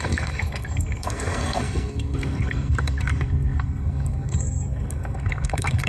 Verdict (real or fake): fake